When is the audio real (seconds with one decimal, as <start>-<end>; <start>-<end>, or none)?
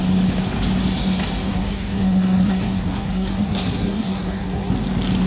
0.0-1.5; 4.7-5.3